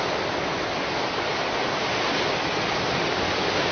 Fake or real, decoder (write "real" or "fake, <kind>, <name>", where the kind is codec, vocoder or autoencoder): real